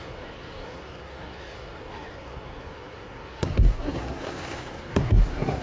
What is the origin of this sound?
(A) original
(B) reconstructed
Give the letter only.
B